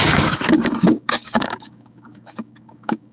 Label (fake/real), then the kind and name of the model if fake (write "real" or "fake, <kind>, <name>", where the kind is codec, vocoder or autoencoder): fake, codec, DAC